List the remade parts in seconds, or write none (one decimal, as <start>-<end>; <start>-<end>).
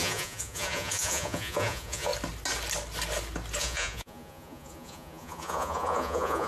0.0-2.1; 3.6-6.5